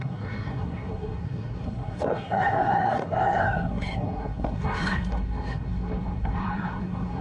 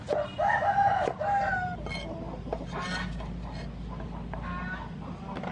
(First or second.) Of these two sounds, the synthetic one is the first